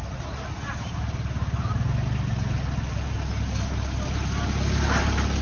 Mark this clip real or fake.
real